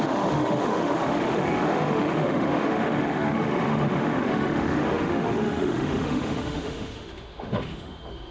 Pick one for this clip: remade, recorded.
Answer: remade